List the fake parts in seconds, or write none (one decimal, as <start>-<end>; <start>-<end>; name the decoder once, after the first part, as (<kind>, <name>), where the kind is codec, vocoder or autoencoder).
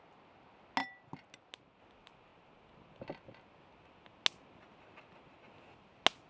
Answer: none